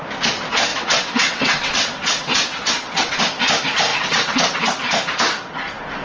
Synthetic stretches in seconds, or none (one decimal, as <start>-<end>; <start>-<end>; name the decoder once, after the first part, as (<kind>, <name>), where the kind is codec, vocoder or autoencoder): 0.7-3.2 (vocoder, WaveNeXt); 3.9-4.7